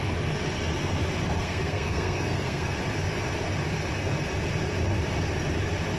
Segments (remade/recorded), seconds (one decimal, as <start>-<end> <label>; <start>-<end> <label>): 0.0-1.4 recorded; 1.4-2.8 remade; 2.8-6.0 recorded